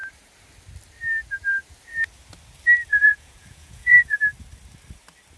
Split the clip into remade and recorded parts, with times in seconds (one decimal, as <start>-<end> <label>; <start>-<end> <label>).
0.0-2.9 recorded; 2.9-4.2 remade; 4.2-5.4 recorded